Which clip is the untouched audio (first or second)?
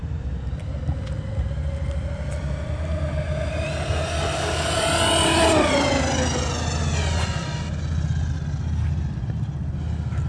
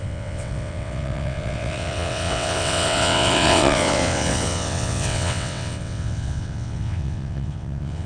first